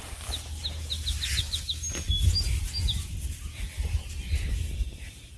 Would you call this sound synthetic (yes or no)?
no